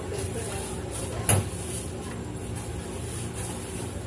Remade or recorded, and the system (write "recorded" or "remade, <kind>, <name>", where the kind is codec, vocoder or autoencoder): recorded